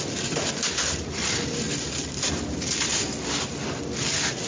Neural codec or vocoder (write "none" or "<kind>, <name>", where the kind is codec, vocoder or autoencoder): none